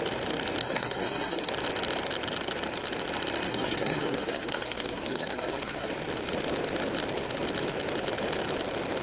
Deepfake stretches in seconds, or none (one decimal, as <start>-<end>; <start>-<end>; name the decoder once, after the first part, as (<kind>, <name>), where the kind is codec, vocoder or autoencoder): 0.6-1.5 (codec, SNAC); 3.5-5.9

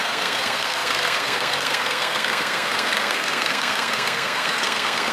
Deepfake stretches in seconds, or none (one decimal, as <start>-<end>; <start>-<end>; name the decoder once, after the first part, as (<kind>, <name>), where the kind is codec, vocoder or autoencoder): 0.0-5.1 (codec, SNAC)